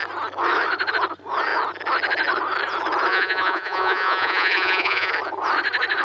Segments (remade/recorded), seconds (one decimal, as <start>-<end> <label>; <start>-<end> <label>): 0.0-3.1 recorded; 3.1-5.1 remade; 5.1-6.0 recorded